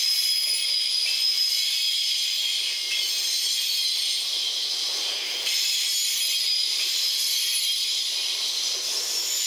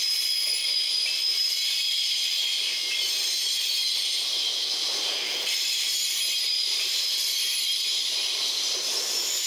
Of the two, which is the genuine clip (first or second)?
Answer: first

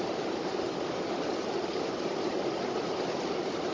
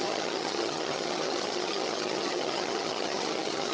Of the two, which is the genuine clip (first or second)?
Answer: first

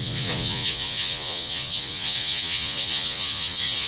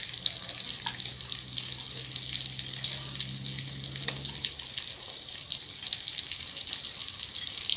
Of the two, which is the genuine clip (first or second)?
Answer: second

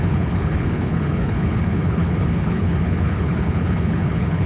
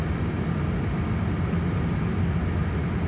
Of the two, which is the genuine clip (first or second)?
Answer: second